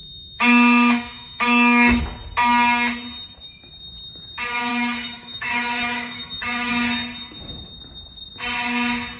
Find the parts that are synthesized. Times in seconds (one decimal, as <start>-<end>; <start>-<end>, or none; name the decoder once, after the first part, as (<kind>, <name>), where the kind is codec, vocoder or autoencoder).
0.0-2.0 (autoencoder, DAC-VAE); 4.7-6.7